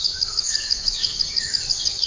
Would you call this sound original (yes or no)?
no